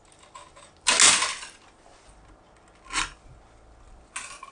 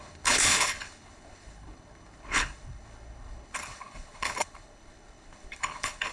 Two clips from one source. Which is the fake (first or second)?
second